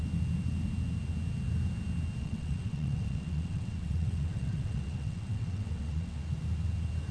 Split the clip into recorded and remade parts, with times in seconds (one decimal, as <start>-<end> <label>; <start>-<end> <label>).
0.0-2.2 recorded; 2.2-6.2 remade; 6.2-7.1 recorded